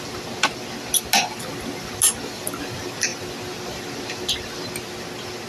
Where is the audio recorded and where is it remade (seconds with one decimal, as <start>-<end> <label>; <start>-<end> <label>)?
0.0-5.5 recorded